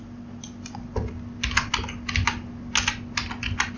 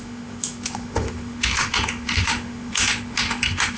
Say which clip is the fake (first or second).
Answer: second